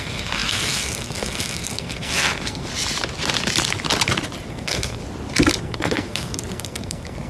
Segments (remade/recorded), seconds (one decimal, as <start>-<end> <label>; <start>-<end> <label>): 0.0-2.7 remade; 2.7-4.5 recorded; 4.5-5.0 remade; 5.0-5.6 recorded; 5.6-7.3 remade